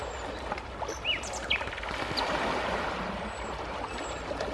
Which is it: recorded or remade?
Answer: recorded